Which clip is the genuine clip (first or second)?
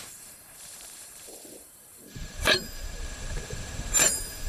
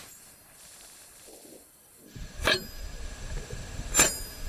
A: second